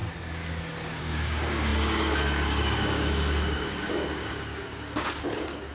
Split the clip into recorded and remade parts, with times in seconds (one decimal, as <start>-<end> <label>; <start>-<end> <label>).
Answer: 0.0-1.0 recorded; 1.0-5.7 remade